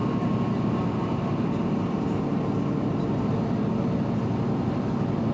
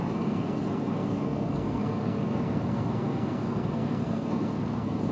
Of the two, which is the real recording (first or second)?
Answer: first